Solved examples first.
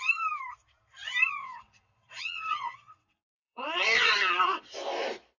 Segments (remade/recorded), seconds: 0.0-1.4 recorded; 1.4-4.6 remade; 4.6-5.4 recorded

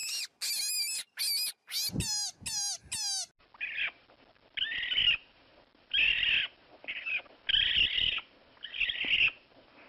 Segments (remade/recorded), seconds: 0.0-9.9 recorded

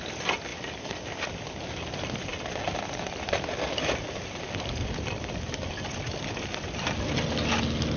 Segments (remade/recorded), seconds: 0.0-8.0 recorded

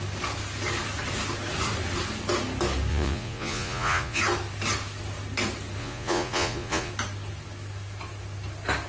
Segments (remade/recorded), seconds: 0.0-2.9 recorded; 2.9-4.2 remade; 4.2-5.8 recorded; 5.8-6.9 remade; 6.9-8.9 recorded

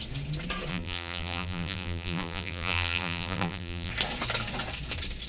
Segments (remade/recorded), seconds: 0.0-0.7 recorded; 0.7-3.9 remade; 3.9-5.3 recorded